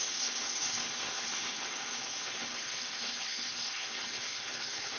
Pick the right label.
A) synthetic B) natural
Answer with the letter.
A